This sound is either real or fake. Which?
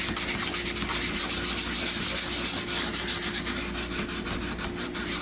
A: real